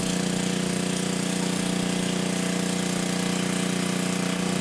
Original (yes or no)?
yes